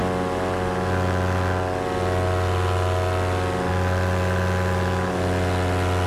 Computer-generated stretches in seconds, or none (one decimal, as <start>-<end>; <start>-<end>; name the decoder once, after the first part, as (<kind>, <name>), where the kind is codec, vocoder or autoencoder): none